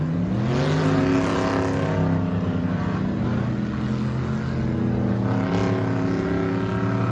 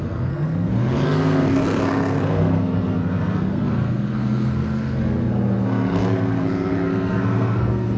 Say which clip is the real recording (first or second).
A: first